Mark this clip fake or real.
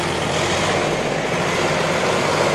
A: real